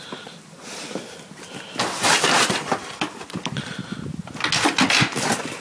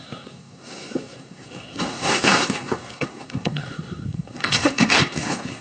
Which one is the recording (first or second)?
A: first